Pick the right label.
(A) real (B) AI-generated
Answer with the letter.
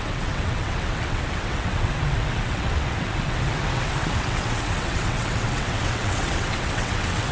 B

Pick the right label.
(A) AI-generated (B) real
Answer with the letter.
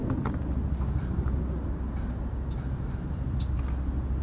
B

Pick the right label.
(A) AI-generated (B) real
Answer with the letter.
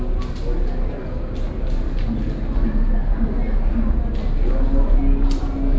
B